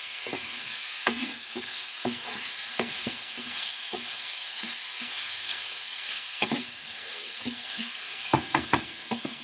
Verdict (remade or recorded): remade